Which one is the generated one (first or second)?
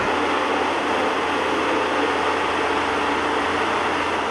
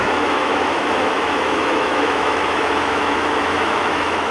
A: second